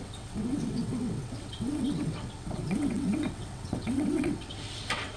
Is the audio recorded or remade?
remade